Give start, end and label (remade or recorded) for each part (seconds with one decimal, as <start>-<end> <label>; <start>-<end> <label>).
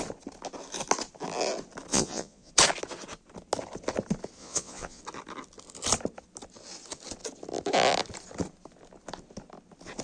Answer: 0.0-1.9 recorded; 1.9-2.5 remade; 2.5-4.4 recorded; 4.4-5.0 remade; 5.0-10.0 recorded